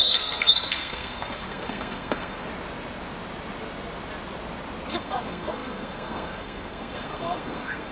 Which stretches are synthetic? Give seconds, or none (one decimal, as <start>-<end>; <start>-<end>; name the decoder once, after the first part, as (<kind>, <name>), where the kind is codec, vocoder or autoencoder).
0.0-2.5 (codec, SNAC); 4.9-7.9